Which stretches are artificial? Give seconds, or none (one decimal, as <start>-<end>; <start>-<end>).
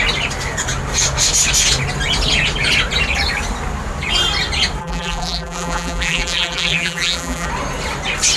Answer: 4.8-7.5